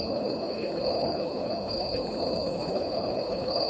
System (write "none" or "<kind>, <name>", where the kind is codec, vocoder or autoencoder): codec, HILCodec